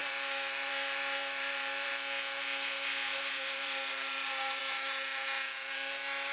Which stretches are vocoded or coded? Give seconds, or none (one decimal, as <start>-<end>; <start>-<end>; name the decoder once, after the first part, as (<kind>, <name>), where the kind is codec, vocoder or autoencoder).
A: 0.0-1.9 (vocoder, BigVGAN v2); 3.1-4.6